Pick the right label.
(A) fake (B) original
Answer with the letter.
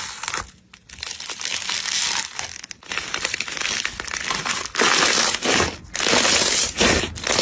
B